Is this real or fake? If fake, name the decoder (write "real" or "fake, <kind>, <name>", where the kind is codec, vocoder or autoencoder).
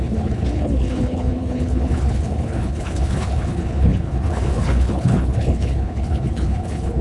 fake, codec, HILCodec